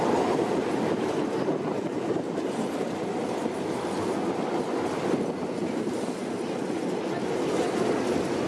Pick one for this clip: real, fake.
real